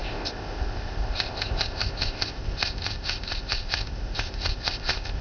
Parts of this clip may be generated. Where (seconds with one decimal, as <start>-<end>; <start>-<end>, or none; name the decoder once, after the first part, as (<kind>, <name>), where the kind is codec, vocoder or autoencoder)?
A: 0.0-5.2 (codec, ZipCodec)